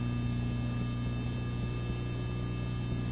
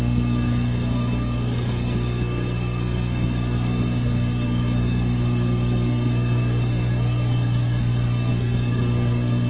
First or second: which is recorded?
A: first